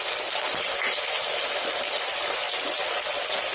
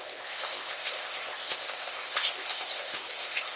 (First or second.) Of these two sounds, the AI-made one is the second